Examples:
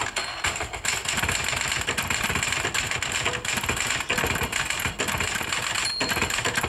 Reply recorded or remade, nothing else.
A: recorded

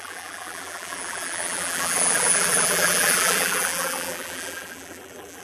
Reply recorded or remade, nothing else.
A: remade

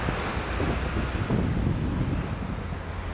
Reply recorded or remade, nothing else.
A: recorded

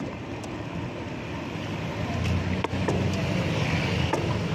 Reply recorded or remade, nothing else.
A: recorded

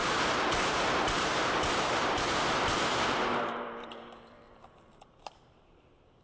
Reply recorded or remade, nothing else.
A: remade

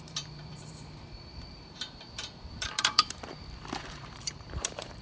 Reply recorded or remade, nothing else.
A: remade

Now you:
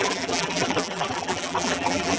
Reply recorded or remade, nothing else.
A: remade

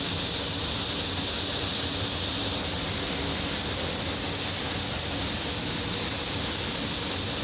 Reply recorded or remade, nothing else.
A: recorded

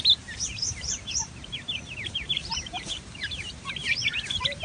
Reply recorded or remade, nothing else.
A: remade